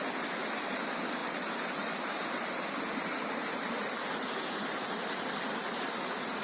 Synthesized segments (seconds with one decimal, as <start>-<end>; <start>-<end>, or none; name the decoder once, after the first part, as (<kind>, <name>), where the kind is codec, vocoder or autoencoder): none